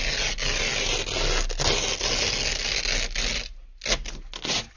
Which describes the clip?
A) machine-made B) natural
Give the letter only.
B